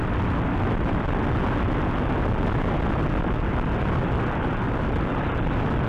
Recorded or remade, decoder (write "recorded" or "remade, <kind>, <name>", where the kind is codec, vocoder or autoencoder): recorded